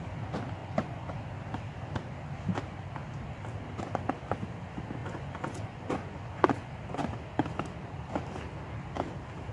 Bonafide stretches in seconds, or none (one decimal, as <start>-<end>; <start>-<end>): 0.0-0.6; 1.1-5.0; 6.7-9.5